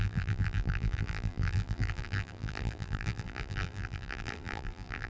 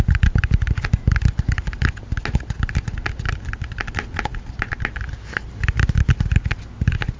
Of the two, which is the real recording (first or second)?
second